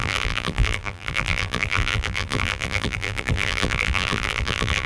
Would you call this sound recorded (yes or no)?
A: no